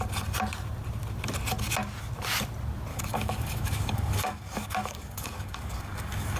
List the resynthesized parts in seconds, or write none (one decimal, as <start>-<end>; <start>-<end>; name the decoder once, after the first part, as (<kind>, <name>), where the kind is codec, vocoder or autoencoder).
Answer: 2.9-6.4 (codec, DAC)

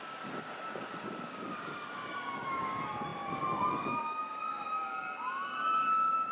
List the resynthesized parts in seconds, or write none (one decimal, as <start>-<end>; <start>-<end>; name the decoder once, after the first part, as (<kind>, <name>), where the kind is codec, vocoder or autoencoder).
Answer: 0.0-6.3 (codec, DAC)